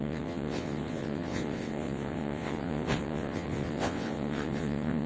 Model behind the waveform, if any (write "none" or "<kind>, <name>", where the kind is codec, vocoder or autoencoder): vocoder, WaveNeXt